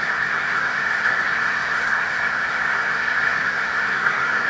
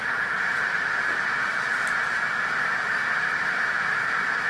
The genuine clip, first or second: second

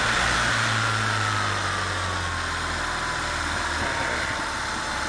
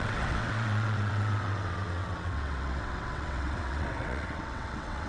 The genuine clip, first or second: first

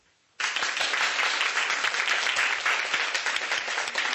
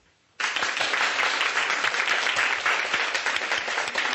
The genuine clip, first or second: first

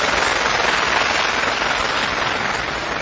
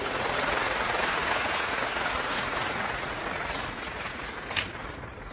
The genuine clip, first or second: first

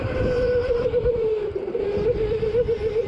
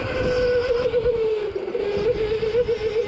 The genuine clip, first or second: second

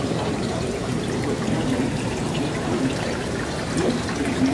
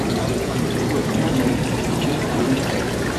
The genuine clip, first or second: second